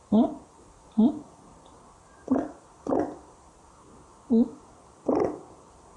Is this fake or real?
real